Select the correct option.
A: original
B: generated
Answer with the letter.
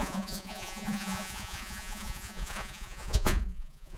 B